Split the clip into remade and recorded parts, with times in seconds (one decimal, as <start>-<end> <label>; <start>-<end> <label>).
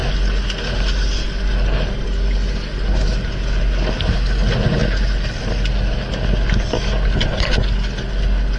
0.0-8.6 recorded